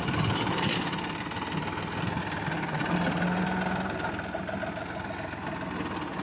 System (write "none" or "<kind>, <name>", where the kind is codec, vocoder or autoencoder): none